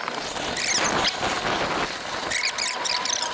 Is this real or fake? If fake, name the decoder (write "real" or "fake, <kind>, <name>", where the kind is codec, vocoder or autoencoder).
real